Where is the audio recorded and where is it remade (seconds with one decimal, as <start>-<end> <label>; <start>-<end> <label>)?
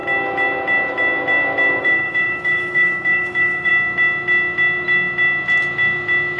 0.0-1.8 recorded; 1.8-3.7 remade; 3.7-6.4 recorded